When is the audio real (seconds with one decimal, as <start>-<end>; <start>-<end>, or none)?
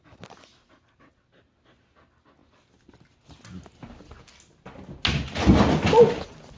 0.0-6.6